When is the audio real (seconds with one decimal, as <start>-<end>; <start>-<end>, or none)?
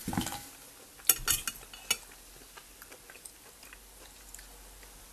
0.0-5.1